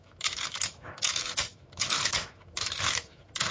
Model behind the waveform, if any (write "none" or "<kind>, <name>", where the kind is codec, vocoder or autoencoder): autoencoder, DAC-VAE